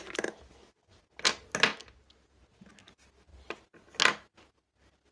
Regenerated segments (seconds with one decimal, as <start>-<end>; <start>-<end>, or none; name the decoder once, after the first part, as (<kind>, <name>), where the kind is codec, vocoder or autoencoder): none